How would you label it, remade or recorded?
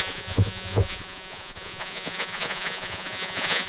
remade